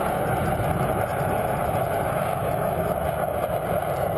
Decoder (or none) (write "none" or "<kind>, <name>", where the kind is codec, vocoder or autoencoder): none